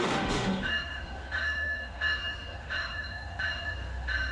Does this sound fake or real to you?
fake